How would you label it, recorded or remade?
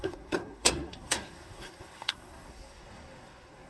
remade